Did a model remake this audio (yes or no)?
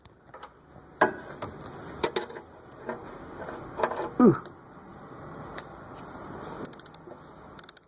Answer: no